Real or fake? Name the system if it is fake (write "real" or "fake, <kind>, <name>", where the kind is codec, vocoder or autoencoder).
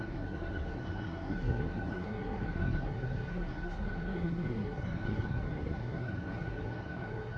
fake, codec, SNAC